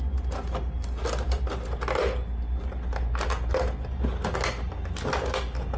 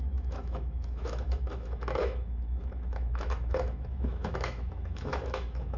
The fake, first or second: second